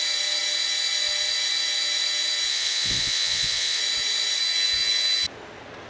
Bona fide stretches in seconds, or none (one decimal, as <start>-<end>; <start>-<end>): 0.0-2.5; 3.8-5.9